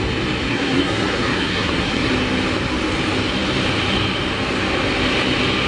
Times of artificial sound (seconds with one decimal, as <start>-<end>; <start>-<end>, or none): 0.5-2.1